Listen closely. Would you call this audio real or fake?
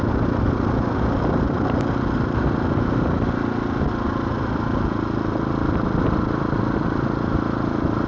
real